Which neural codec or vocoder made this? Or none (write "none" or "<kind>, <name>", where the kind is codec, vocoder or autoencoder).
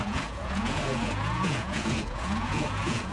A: vocoder, Vocos